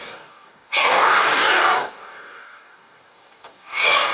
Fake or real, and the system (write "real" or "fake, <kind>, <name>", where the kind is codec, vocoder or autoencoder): fake, codec, DAC